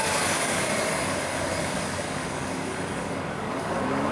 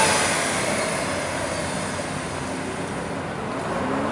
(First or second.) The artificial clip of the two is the first